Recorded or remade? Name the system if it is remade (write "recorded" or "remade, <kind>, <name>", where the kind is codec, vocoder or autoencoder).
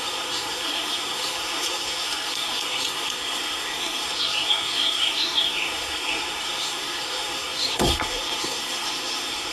remade, codec, SNAC